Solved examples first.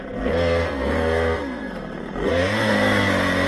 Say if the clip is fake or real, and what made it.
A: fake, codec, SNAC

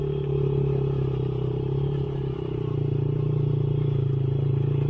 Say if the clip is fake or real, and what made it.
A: real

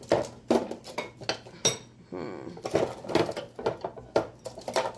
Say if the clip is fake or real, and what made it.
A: real